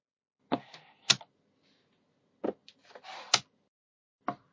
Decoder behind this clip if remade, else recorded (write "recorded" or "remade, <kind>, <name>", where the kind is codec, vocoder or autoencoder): recorded